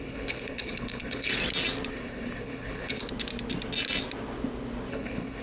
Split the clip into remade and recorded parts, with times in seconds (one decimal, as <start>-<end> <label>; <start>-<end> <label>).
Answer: 0.0-1.3 remade; 1.3-1.9 recorded; 1.9-3.0 remade; 3.0-4.9 recorded; 4.9-5.4 remade